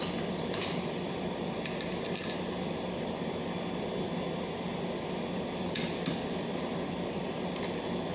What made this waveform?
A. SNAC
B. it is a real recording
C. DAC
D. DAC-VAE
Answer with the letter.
B